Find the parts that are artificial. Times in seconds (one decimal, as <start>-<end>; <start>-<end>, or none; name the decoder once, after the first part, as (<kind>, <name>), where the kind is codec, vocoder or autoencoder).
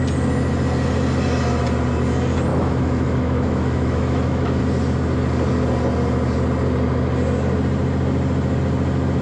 2.5-4.6 (autoencoder, DAC-VAE)